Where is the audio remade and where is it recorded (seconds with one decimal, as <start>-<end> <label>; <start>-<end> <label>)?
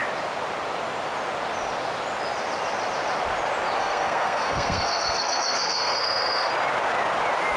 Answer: 0.0-3.8 recorded; 3.8-6.5 remade; 6.5-7.6 recorded